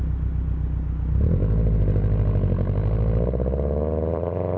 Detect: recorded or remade recorded